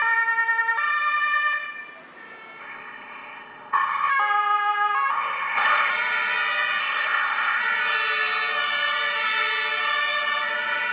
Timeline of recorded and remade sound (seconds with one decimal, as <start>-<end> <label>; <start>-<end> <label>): 0.0-2.6 recorded; 2.6-4.1 remade; 4.1-5.1 recorded; 5.1-5.9 remade; 5.9-6.8 recorded; 6.8-7.6 remade; 7.6-10.9 recorded

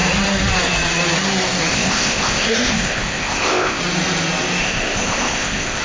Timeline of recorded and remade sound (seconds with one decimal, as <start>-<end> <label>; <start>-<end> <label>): 0.0-1.7 recorded; 1.7-3.8 remade; 3.8-4.6 recorded; 4.6-5.8 remade

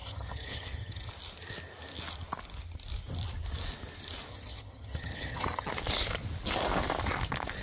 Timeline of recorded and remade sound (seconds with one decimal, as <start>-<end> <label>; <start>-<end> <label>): 0.0-1.1 remade; 1.1-4.3 recorded; 4.3-5.7 remade; 5.7-7.6 recorded

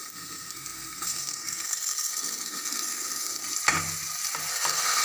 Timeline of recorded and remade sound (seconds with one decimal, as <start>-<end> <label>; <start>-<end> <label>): 0.0-3.4 remade; 3.4-4.5 recorded; 4.5-5.0 remade

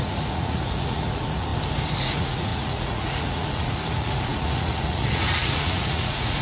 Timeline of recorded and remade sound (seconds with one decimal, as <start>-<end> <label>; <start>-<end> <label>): 0.0-1.5 remade; 1.5-2.0 recorded; 2.0-6.4 remade

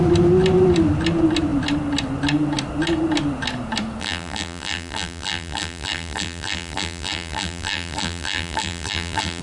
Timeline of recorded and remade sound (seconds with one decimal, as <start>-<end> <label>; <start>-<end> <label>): 0.0-4.0 recorded; 4.0-9.4 remade

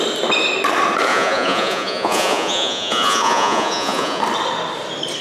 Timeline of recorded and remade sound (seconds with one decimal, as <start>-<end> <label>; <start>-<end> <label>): 0.0-1.1 recorded; 1.1-4.2 remade; 4.2-5.2 recorded

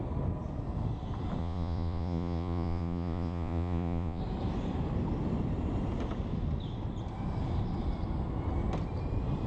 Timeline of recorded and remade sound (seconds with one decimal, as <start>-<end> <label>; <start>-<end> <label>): 0.0-1.4 recorded; 1.4-4.2 remade; 4.2-9.5 recorded